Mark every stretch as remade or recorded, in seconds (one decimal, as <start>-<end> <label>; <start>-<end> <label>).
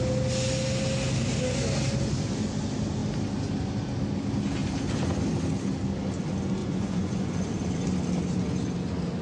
0.0-6.6 recorded; 6.6-7.5 remade; 7.5-9.2 recorded